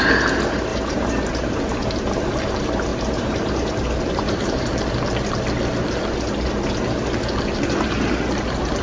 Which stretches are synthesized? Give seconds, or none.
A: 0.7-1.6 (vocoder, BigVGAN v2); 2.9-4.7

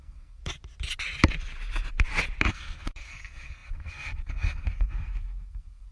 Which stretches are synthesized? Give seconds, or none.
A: 0.0-0.4 (codec, SNAC); 2.5-5.9